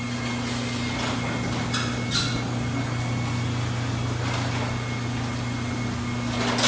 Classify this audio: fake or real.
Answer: real